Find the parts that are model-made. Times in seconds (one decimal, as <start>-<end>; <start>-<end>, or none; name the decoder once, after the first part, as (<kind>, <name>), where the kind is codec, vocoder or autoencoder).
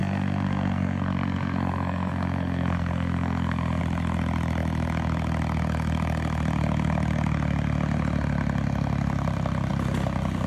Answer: 0.0-3.8 (codec, SNAC)